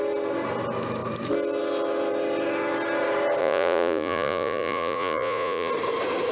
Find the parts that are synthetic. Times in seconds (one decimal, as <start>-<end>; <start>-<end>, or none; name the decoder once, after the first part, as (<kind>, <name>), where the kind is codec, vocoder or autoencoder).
3.4-5.7 (vocoder, Vocos)